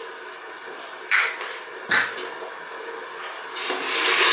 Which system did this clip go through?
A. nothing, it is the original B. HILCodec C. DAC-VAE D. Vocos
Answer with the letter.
A